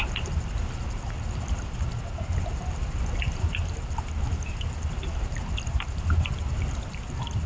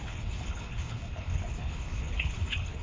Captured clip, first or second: first